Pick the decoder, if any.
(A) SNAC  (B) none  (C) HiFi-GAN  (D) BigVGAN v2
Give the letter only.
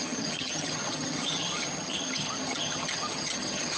C